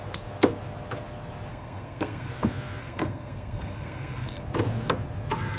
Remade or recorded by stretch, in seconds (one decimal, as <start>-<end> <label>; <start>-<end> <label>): 0.0-1.5 recorded; 1.5-2.3 remade; 2.3-2.8 recorded; 2.8-4.4 remade; 4.4-5.6 recorded

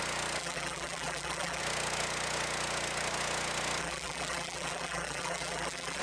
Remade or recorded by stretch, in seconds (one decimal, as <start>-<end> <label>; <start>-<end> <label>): 0.0-0.4 recorded; 0.4-1.6 remade; 1.6-3.8 recorded; 3.8-6.0 remade

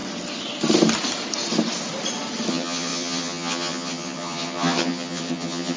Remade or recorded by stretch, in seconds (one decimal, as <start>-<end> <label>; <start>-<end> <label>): 0.0-2.5 recorded; 2.5-5.8 remade

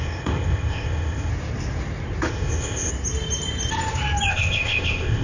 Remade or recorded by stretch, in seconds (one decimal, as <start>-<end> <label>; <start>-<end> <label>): 0.0-1.3 remade; 1.3-2.3 recorded; 2.3-2.9 remade; 2.9-4.3 recorded; 4.3-5.2 remade

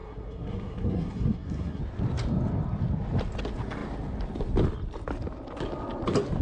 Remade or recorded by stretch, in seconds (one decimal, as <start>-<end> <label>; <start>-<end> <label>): 0.0-1.8 remade; 1.8-6.4 recorded

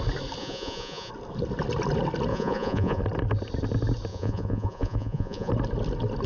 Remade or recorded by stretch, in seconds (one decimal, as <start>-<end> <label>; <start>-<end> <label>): 0.0-0.4 recorded; 0.4-1.1 remade; 1.1-2.3 recorded; 2.3-3.0 remade; 3.0-4.1 recorded; 4.1-5.5 remade; 5.5-6.3 recorded

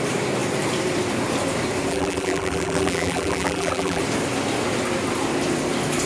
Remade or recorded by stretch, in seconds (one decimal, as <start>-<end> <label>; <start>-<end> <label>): 0.0-1.9 recorded; 1.9-4.0 remade; 4.0-6.1 recorded